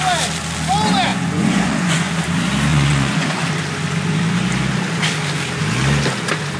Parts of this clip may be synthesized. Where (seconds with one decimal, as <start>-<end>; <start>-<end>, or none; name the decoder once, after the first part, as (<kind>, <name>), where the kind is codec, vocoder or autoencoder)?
1.1-2.1 (vocoder, Vocos); 2.7-3.5